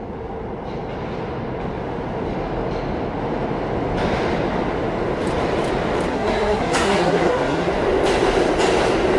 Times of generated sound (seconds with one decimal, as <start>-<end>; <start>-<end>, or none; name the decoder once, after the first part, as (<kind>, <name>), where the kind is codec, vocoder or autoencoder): 6.1-7.7 (codec, SNAC)